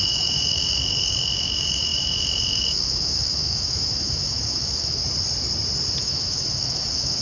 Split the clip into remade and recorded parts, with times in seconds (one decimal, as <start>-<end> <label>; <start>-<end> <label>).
0.0-5.0 remade; 5.0-6.0 recorded; 6.0-7.2 remade